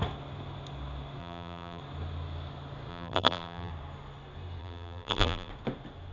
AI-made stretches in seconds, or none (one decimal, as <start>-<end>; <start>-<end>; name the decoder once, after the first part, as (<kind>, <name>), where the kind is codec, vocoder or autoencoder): 1.2-1.8 (vocoder, BigVGAN v2); 2.9-3.7; 4.6-5.5